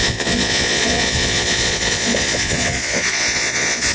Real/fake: fake